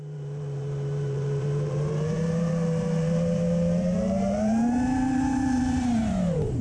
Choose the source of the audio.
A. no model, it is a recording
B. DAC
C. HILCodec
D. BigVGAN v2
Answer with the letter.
D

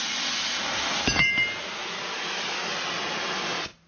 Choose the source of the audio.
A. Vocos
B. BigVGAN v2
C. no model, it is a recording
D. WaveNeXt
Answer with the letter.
C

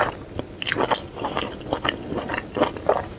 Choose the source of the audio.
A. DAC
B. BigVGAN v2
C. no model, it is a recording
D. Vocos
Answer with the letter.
C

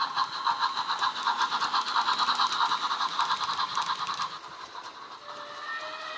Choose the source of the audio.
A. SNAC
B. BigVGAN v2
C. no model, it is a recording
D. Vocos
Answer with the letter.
C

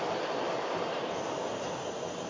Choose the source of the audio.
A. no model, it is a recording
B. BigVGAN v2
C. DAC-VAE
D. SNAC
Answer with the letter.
A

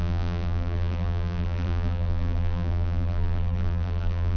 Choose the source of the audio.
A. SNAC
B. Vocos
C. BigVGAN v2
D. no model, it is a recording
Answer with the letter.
C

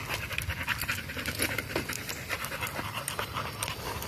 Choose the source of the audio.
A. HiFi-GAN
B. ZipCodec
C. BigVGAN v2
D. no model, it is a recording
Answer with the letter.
D